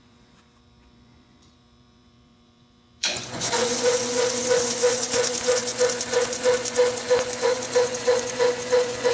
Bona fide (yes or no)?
no